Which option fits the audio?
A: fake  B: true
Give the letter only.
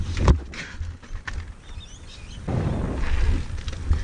B